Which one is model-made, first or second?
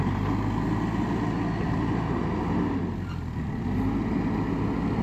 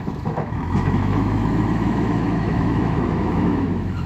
second